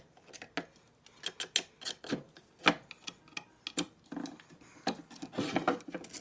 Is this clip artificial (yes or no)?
no